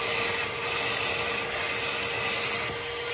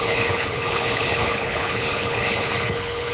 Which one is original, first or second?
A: first